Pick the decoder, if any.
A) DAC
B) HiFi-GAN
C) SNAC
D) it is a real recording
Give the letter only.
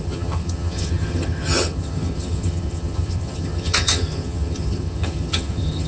B